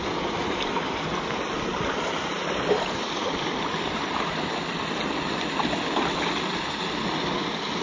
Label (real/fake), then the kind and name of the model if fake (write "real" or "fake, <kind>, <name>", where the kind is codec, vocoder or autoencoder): real